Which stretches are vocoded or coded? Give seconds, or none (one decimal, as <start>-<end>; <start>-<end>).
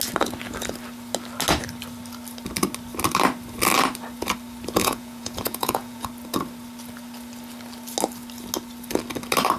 4.8-6.1